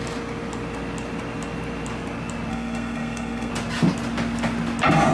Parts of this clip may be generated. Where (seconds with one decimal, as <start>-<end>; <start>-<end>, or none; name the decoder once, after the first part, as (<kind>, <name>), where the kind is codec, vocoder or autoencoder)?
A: 2.5-3.5 (codec, SNAC)